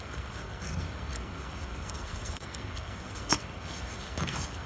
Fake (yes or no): yes